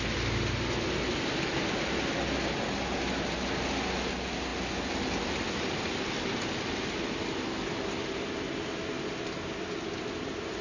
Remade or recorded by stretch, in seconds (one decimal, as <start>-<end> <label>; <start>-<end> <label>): 0.0-10.6 recorded